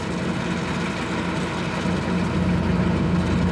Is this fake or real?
real